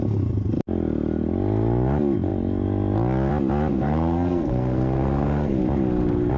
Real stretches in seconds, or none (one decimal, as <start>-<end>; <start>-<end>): 0.0-3.7; 5.6-6.4

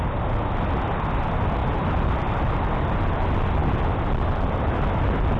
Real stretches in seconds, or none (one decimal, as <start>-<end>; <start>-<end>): 0.0-5.4

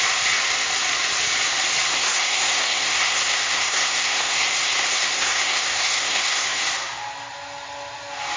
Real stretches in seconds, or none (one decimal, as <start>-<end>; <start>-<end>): 0.0-1.9; 6.6-8.4

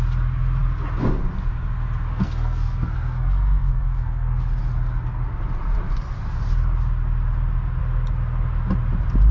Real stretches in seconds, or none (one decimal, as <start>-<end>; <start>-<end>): 0.0-2.1; 4.6-9.3

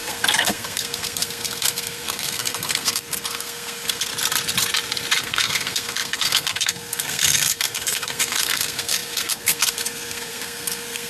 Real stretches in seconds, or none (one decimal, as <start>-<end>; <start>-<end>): 4.1-5.2

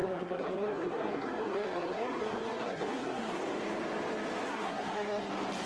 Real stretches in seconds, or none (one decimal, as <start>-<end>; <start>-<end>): 3.4-4.5; 5.3-5.7

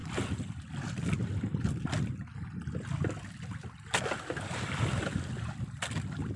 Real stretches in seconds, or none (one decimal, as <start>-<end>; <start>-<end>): 0.0-6.4